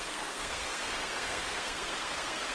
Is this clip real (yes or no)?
no